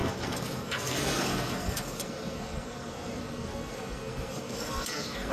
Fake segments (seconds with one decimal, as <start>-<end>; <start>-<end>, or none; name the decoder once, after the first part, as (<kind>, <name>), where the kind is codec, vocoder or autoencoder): 0.0-5.3 (codec, SNAC)